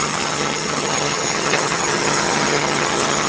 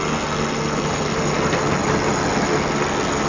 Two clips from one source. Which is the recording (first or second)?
second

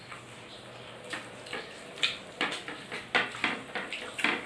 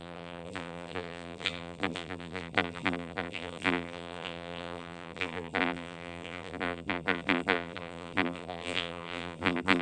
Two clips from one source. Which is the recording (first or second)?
first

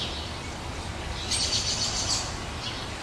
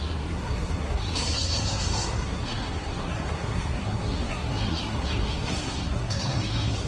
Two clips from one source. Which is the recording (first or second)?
first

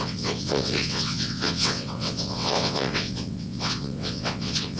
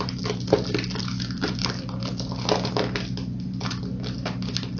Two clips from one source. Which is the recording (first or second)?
second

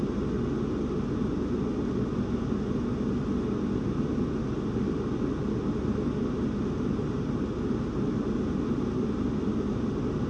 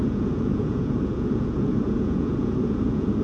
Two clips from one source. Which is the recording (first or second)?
first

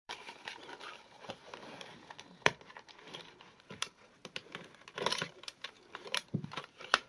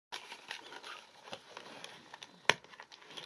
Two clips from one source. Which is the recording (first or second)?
second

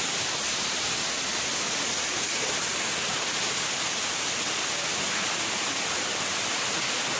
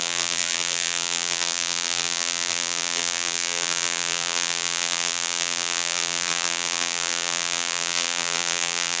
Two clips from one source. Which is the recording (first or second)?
first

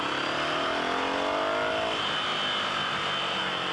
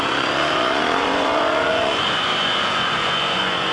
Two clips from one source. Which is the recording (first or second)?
first